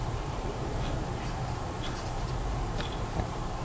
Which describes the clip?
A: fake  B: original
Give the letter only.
A